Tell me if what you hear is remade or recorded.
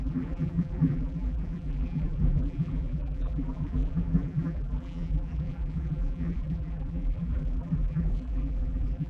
remade